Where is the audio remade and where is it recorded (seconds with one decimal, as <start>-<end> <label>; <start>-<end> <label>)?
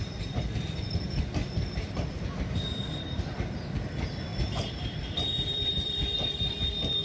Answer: 0.0-7.0 remade